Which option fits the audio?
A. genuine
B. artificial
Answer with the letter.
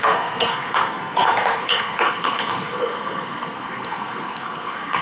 B